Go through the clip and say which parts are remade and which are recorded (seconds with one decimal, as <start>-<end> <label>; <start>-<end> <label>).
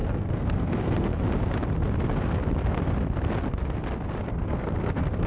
0.0-1.1 remade; 1.1-4.3 recorded; 4.3-5.3 remade